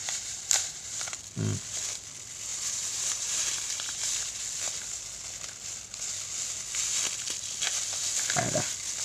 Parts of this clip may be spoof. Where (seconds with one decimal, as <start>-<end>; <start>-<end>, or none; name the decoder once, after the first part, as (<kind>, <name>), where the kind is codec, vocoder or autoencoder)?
0.0-1.2 (vocoder, BigVGAN v2); 2.5-4.1